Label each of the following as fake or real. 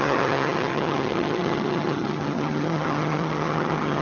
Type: fake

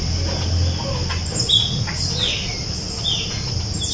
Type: real